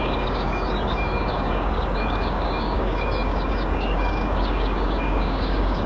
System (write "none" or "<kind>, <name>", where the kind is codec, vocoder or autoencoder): codec, DAC